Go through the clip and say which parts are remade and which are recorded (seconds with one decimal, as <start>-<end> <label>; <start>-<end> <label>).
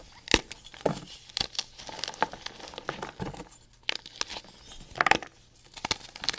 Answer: 0.0-6.4 recorded